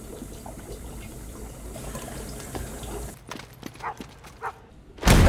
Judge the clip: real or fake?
real